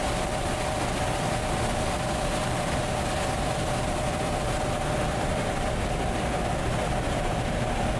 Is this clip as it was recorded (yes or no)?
yes